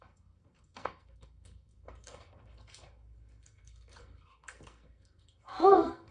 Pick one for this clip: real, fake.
fake